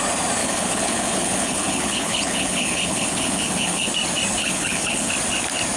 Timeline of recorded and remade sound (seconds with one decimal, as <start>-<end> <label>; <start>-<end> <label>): 0.0-0.4 recorded; 0.4-3.9 remade; 3.9-4.4 recorded; 4.4-5.1 remade; 5.1-5.8 recorded